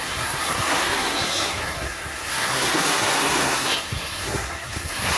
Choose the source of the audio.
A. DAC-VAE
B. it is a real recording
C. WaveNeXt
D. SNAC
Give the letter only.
D